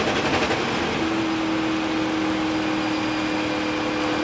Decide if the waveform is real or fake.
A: real